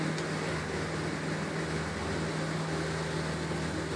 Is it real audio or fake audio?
real